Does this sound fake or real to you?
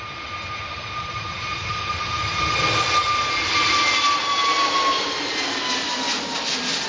real